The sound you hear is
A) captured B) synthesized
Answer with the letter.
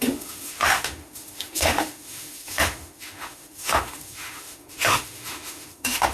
B